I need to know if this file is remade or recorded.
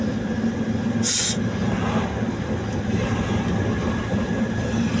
recorded